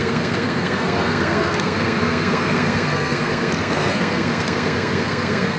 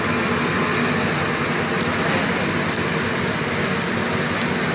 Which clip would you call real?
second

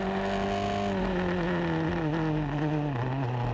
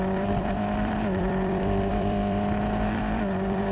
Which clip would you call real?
first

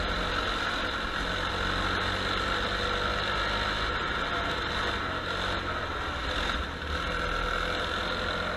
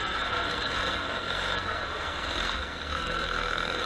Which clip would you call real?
first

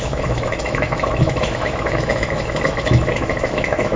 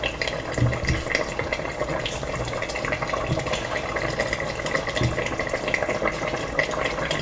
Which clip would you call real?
second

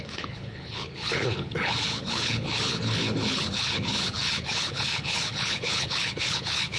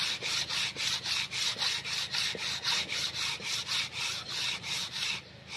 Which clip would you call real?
second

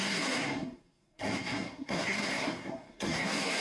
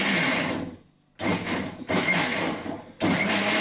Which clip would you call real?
second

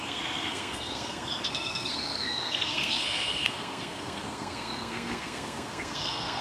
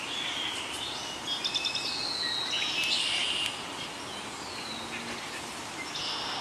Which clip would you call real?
second